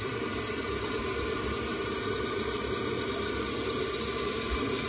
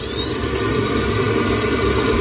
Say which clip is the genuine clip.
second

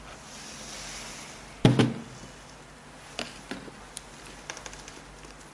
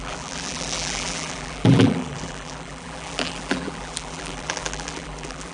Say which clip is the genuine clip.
first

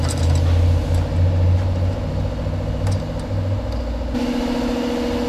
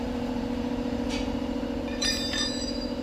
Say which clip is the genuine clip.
first